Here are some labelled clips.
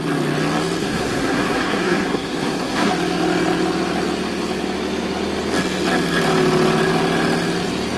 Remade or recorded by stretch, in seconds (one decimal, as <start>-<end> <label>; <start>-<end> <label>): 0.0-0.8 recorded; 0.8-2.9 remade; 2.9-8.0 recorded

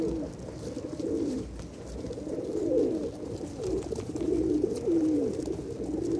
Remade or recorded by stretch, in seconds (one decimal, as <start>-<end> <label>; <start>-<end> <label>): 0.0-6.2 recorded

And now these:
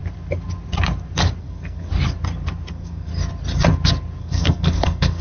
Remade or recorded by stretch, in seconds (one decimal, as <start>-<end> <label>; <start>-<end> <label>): 0.0-1.4 recorded; 1.4-1.9 remade; 1.9-2.7 recorded; 2.7-3.1 remade; 3.1-4.2 recorded; 4.2-5.2 remade

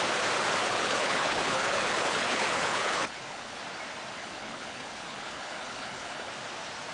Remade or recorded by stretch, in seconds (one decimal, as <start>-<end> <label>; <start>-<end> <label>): 0.0-0.6 recorded; 0.6-3.6 remade; 3.6-4.2 recorded; 4.2-6.3 remade; 6.3-6.9 recorded

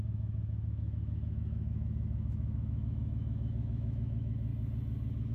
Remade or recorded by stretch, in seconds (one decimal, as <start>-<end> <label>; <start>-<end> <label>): 0.0-4.5 remade; 4.5-5.3 recorded